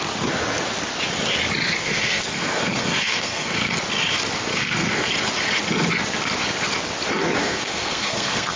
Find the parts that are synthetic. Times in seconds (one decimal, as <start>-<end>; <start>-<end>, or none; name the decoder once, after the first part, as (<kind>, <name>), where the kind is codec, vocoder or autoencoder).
1.8-3.7 (codec, SNAC); 4.5-5.1; 7.4-8.6